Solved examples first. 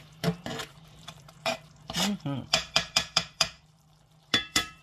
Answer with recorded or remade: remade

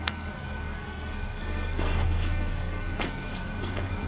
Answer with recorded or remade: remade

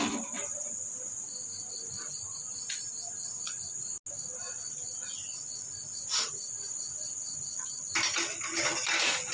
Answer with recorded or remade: recorded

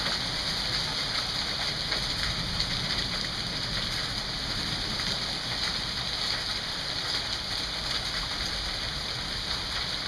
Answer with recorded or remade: recorded